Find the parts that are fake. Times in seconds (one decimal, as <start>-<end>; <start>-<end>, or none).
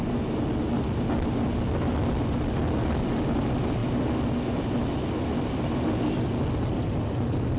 none